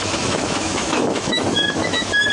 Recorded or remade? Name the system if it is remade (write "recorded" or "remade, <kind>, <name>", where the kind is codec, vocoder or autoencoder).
remade, autoencoder, DAC-VAE